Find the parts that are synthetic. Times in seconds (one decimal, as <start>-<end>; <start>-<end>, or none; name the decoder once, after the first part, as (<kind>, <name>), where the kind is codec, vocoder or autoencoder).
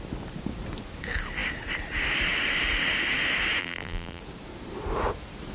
3.6-4.2 (vocoder, BigVGAN v2)